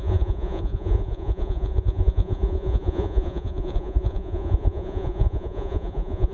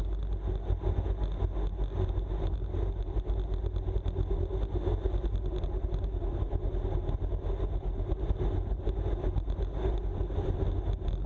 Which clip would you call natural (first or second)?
second